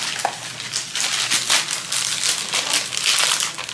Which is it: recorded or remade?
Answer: recorded